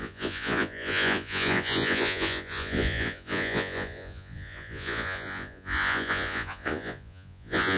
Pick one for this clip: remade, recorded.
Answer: remade